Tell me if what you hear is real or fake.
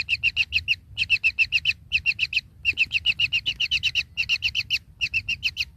real